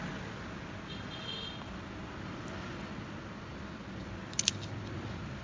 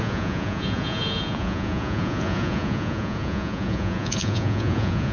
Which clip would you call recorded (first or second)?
first